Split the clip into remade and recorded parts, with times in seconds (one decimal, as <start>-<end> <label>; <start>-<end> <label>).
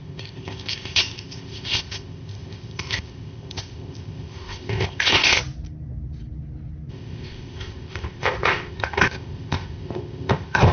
0.0-5.4 remade; 5.4-6.9 recorded; 6.9-10.7 remade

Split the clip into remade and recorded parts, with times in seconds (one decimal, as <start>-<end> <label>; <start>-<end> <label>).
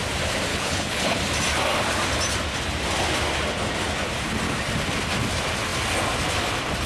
0.0-0.5 recorded; 0.5-1.2 remade; 1.2-6.9 recorded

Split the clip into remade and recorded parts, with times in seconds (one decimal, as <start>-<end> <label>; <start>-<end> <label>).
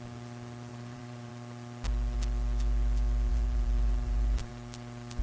0.0-0.7 recorded; 0.7-1.3 remade; 1.3-3.3 recorded; 3.3-4.5 remade; 4.5-5.2 recorded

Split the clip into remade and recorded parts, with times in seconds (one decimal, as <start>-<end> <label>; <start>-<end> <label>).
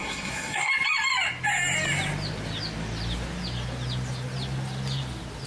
0.0-0.7 remade; 0.7-5.5 recorded